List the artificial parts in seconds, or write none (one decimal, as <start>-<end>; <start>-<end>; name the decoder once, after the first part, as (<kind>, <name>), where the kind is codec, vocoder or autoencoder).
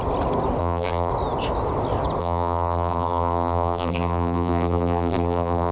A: 0.6-1.1 (vocoder, BigVGAN v2); 2.2-5.7